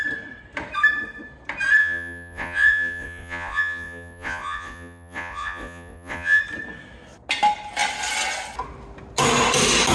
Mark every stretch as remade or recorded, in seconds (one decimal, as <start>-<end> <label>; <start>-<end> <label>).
0.0-1.8 recorded; 1.8-6.4 remade; 6.4-9.9 recorded